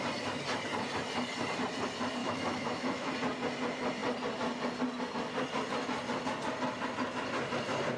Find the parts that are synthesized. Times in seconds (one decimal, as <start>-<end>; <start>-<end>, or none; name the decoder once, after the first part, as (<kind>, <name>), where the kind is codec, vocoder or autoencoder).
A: 2.2-3.1 (autoencoder, DAC-VAE)